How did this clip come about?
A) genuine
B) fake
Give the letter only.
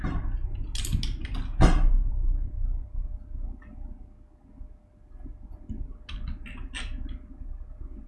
A